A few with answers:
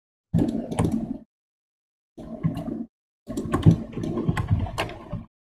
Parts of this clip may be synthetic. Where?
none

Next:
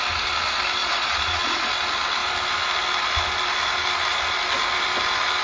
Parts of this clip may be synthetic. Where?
0.8-1.7 (vocoder, Vocos)

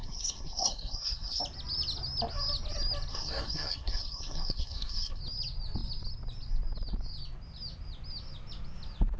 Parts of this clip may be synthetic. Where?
0.0-1.4 (codec, SNAC); 3.1-5.2

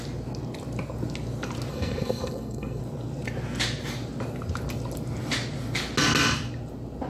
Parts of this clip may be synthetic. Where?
1.7-2.8 (codec, SNAC)